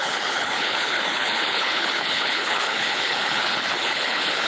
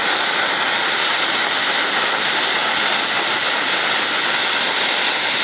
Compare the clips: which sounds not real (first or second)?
first